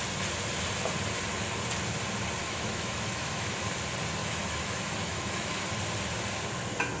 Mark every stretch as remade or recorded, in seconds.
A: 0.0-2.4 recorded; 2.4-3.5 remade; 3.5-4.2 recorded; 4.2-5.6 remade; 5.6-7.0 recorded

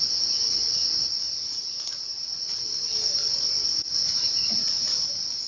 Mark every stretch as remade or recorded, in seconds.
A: 0.0-5.5 recorded

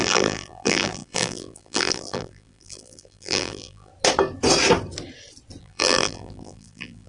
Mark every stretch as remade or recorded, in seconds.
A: 0.0-3.9 remade; 3.9-5.6 recorded; 5.6-7.1 remade

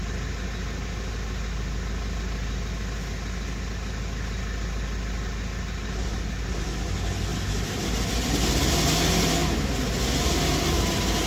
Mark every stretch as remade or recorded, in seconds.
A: 0.0-11.3 recorded